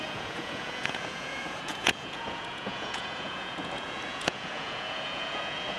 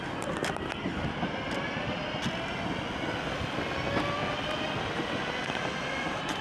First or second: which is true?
second